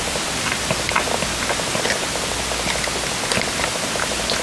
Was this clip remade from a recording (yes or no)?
no